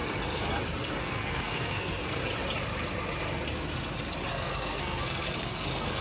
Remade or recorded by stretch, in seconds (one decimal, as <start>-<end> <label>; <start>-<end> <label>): 0.0-1.0 recorded; 1.0-2.2 remade; 2.2-4.3 recorded; 4.3-6.0 remade